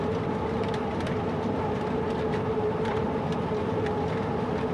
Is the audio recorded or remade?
remade